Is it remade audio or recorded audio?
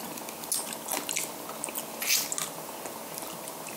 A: recorded